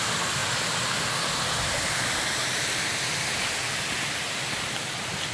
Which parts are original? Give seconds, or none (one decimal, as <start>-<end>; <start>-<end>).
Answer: 0.0-5.3